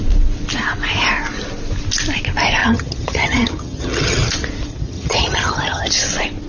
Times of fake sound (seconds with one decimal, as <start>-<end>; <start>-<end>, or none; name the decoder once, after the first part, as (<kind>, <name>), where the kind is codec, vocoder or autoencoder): 2.6-4.3 (vocoder, HiFi-GAN); 4.7-5.9